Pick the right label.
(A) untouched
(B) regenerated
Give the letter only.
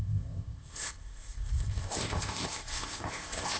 B